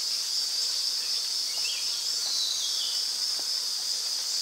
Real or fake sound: real